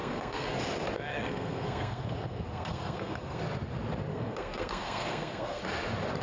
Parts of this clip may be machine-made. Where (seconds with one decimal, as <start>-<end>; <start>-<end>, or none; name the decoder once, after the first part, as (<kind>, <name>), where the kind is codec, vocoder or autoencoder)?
0.0-0.6 (codec, SNAC); 1.1-3.4; 4.1-5.6